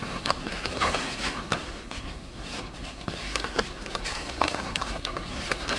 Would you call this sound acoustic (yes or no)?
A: no